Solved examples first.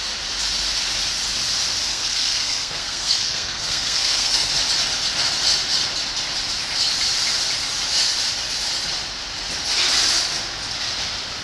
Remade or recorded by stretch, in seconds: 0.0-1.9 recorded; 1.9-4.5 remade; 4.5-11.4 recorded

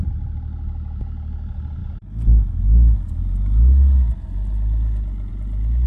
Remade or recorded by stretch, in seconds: 0.0-5.9 recorded

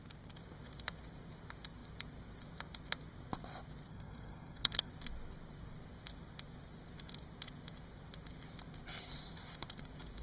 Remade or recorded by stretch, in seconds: 0.0-3.9 recorded; 3.9-4.9 remade; 4.9-10.2 recorded

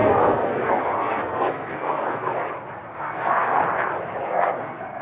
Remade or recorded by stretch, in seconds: 0.0-2.5 remade; 2.5-2.9 recorded; 2.9-3.6 remade; 3.6-4.2 recorded; 4.2-5.0 remade

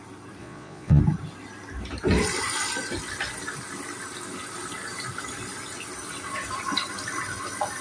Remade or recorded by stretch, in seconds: 0.0-0.4 recorded; 0.4-1.0 remade; 1.0-7.8 recorded

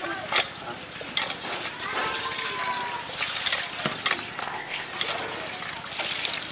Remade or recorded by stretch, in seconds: 0.0-4.4 recorded; 4.4-4.9 remade; 4.9-6.5 recorded

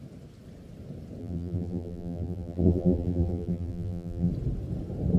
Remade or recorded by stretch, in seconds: 0.0-1.2 recorded; 1.2-4.3 remade; 4.3-5.2 recorded